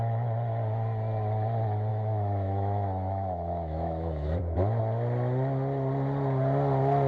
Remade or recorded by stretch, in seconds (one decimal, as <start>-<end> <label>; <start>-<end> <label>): 0.0-1.9 recorded; 1.9-4.8 remade; 4.8-7.1 recorded